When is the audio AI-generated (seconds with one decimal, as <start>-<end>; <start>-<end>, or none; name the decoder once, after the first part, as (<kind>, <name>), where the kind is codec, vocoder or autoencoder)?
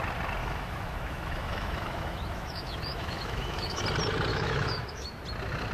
0.4-3.8 (autoencoder, DAC-VAE); 4.3-5.2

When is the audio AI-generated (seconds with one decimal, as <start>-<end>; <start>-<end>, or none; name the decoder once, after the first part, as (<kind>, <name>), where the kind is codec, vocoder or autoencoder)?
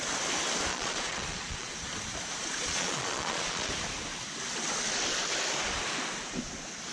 0.7-1.7 (vocoder, Vocos); 2.4-3.7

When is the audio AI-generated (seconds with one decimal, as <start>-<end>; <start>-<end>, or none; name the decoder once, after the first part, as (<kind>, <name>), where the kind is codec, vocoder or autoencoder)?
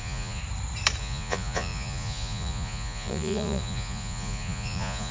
0.0-0.4 (vocoder, Vocos); 1.0-5.1